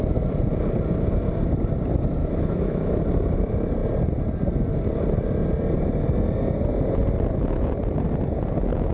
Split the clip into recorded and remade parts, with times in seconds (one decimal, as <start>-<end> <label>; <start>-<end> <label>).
0.0-2.2 recorded; 2.2-3.0 remade; 3.0-8.9 recorded